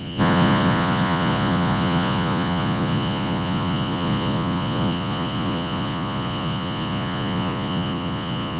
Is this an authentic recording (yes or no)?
no